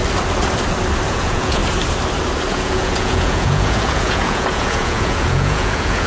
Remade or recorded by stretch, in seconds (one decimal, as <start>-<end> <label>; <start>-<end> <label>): 0.0-1.1 recorded; 1.1-1.6 remade; 1.6-2.5 recorded; 2.5-6.1 remade